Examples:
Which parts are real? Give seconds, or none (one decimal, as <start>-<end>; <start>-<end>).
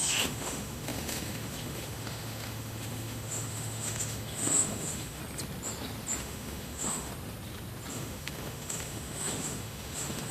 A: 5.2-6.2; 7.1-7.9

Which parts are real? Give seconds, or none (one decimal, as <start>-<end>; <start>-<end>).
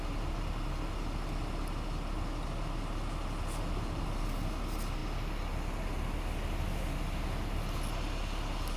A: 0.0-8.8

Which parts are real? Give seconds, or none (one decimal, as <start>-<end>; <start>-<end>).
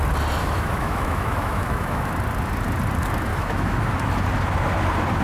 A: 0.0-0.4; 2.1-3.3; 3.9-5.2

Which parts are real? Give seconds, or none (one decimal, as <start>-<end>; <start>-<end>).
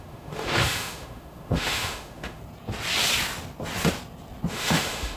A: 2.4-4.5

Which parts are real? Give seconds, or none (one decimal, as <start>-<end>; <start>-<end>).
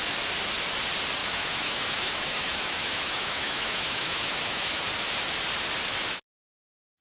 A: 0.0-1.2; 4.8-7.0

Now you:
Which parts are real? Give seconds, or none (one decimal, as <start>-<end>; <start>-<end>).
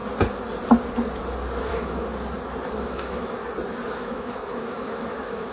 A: 0.0-1.7; 2.1-2.8; 3.4-3.9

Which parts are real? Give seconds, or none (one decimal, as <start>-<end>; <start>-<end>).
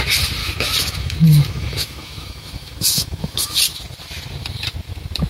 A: 0.0-0.4; 3.6-5.3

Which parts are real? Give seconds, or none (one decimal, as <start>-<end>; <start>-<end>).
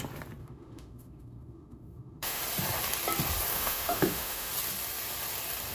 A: 0.0-0.4; 2.4-3.5; 4.5-5.7